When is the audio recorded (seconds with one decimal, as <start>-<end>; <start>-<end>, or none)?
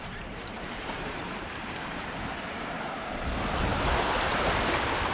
3.1-3.7; 4.6-5.1